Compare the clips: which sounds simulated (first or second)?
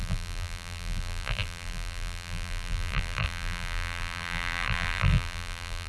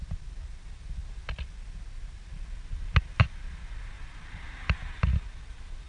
first